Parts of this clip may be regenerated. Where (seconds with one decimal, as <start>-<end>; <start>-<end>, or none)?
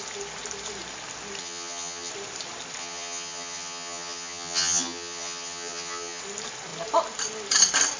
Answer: 1.4-2.1; 2.8-6.2